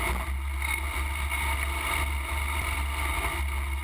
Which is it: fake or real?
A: real